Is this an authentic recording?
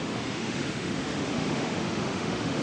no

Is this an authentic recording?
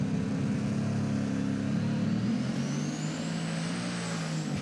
yes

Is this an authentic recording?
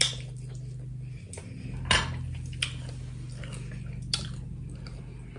yes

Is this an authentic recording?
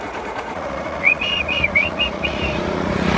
no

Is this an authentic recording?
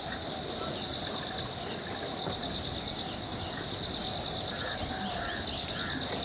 yes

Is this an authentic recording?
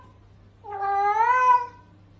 yes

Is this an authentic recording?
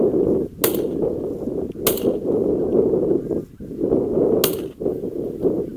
yes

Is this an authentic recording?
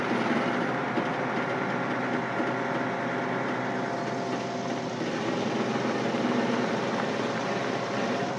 yes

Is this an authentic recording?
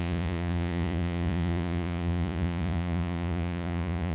no